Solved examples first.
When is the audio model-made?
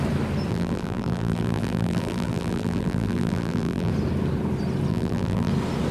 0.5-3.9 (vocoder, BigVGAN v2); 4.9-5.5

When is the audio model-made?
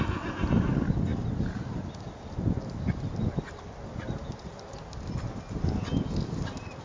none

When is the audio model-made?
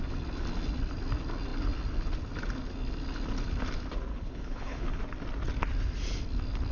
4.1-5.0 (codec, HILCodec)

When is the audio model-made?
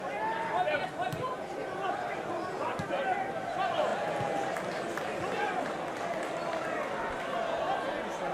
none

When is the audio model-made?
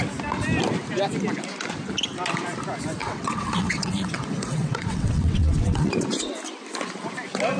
3.0-5.9 (vocoder, WaveNeXt)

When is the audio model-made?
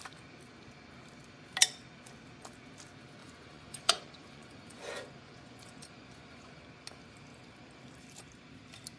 3.2-6.6 (vocoder, Vocos)